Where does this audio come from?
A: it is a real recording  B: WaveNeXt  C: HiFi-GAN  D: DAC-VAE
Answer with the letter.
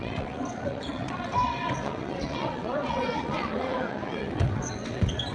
B